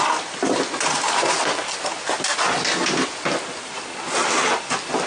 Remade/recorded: recorded